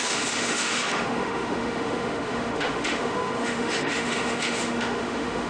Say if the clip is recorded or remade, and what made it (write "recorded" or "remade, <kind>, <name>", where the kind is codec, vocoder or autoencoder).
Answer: remade, autoencoder, DAC-VAE